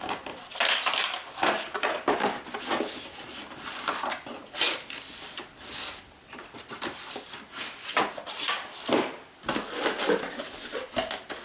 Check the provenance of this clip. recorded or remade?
recorded